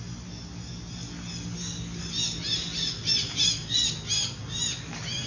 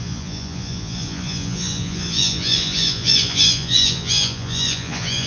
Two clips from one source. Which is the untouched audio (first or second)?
first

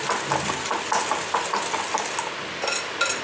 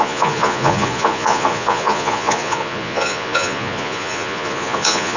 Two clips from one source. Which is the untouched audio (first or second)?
first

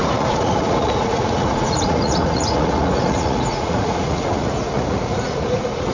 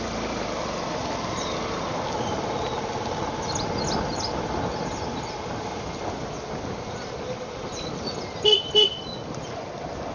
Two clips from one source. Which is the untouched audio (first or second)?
second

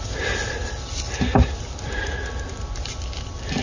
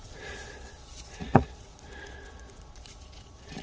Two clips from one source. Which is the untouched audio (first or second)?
first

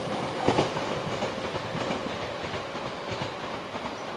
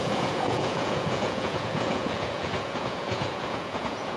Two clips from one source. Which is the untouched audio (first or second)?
first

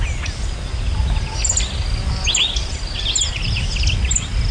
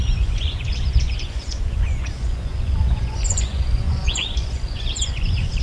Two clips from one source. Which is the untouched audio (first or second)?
first